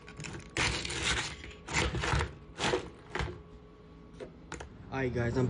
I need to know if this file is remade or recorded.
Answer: recorded